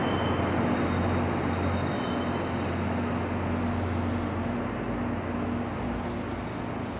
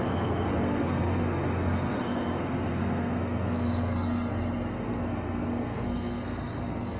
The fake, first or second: second